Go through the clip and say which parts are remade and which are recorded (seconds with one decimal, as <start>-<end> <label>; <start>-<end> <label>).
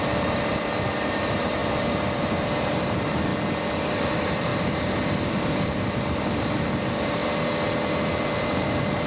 0.0-3.3 remade; 3.3-3.8 recorded; 3.8-7.2 remade; 7.2-8.4 recorded; 8.4-9.1 remade